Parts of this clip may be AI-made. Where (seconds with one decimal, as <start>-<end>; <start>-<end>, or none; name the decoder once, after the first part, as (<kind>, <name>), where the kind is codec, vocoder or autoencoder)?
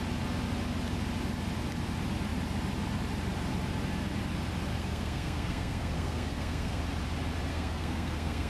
4.7-6.8 (codec, SNAC); 7.5-8.5